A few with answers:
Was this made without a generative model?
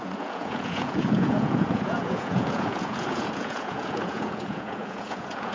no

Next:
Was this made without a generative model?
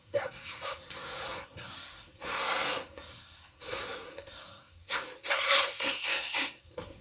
no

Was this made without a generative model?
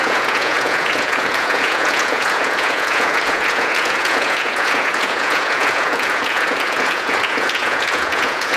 no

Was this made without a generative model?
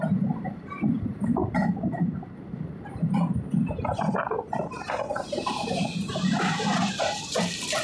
no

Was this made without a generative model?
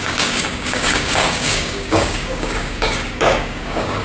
no